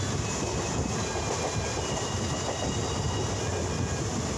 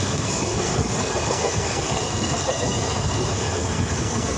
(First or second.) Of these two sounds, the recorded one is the first